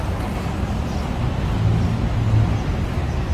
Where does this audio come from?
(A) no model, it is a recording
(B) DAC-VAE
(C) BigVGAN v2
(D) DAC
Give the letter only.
A